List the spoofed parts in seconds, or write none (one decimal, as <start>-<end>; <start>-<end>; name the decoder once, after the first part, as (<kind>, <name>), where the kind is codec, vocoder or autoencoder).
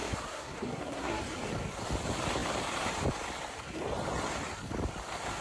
0.0-1.2 (codec, SNAC)